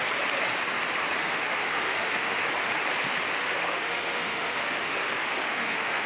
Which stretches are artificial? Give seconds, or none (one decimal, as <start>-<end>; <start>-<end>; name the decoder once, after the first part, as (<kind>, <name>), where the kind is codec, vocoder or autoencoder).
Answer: 1.2-2.4 (autoencoder, DAC-VAE); 3.4-6.1

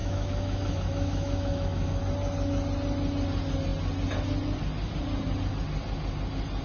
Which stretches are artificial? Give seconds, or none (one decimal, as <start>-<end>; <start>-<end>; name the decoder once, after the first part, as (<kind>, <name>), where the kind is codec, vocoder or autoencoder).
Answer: 0.0-2.0 (autoencoder, DAC-VAE)

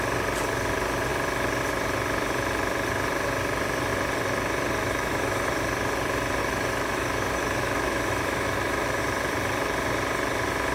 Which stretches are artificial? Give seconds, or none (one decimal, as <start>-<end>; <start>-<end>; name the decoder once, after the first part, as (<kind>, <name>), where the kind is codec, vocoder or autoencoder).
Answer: 4.8-5.5 (autoencoder, DAC-VAE); 6.4-9.0

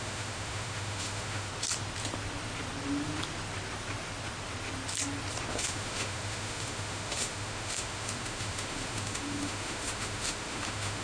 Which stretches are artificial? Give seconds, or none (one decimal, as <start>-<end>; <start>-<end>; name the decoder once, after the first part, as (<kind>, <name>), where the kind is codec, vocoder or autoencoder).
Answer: 0.0-1.5 (autoencoder, DAC-VAE); 5.5-11.0

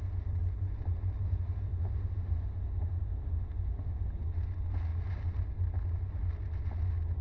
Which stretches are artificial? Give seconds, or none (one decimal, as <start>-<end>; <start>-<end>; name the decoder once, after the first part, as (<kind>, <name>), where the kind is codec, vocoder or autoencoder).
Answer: 1.7-4.1 (autoencoder, DAC-VAE)

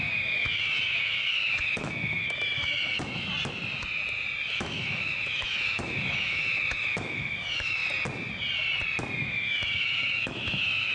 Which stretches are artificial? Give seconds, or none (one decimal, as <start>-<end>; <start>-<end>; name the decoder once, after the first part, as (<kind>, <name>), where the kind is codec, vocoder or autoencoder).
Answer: 0.0-3.3 (autoencoder, DAC-VAE); 4.5-7.8; 9.2-10.9